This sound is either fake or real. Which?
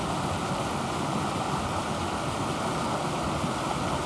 real